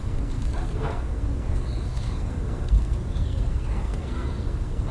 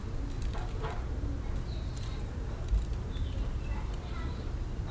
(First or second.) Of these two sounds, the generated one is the first